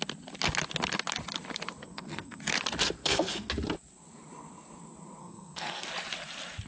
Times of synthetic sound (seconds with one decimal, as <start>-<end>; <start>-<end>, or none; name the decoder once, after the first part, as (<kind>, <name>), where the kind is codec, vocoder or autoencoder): 1.8-2.4 (codec, SNAC); 3.0-3.5; 5.2-5.9